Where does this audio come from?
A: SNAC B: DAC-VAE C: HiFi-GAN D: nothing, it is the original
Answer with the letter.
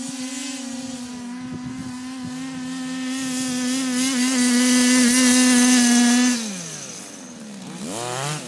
D